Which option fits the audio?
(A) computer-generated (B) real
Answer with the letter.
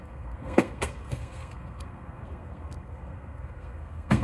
A